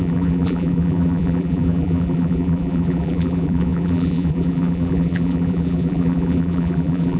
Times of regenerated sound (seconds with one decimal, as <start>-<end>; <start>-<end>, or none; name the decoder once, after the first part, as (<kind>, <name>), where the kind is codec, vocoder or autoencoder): 0.0-7.2 (vocoder, BigVGAN v2)